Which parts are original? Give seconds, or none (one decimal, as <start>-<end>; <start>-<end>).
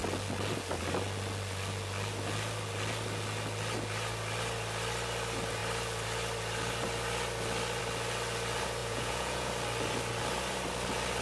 0.0-8.8; 9.5-11.2